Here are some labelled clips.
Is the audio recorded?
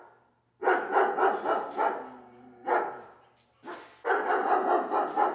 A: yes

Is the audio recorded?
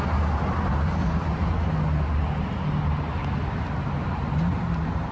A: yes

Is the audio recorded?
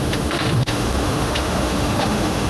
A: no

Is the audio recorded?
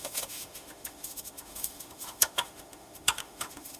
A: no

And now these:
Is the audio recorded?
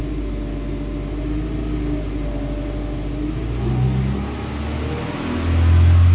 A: yes